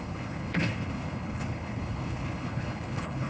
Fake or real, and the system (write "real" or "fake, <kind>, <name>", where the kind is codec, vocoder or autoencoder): fake, codec, HILCodec